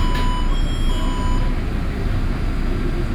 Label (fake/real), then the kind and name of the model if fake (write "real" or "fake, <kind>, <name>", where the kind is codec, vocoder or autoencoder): real